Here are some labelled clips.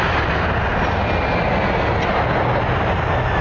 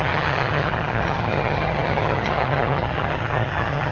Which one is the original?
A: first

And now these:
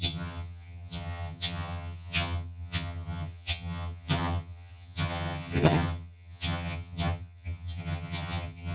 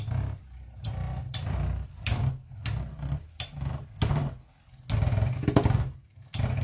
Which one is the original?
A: second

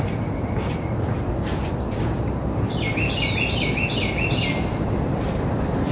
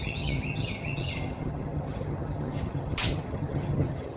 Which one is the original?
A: first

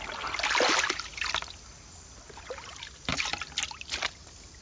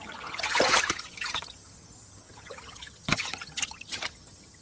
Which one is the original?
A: first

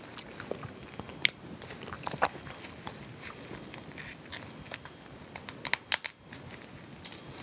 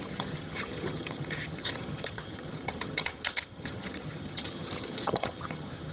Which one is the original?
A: first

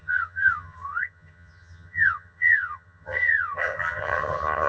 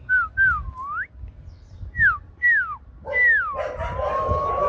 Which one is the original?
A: second